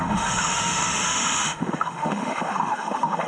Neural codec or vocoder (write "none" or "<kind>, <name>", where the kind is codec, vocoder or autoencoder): autoencoder, DAC-VAE